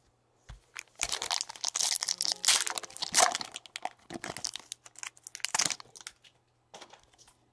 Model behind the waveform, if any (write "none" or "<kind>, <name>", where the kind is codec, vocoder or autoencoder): none